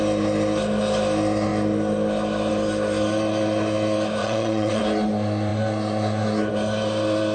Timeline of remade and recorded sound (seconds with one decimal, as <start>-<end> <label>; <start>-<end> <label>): 0.0-4.2 recorded; 4.2-4.8 remade; 4.8-7.3 recorded